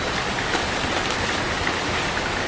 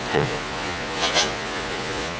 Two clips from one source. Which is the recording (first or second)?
first